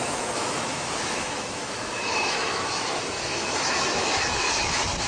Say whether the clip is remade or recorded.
remade